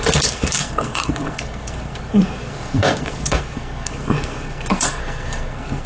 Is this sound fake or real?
fake